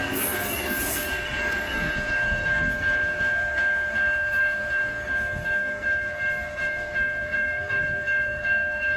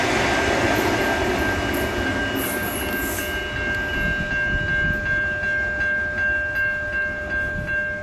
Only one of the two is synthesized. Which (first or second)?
first